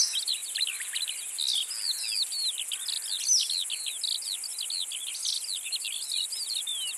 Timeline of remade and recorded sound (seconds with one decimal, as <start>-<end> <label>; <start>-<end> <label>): 0.0-7.0 recorded